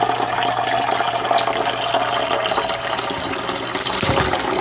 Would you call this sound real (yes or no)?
yes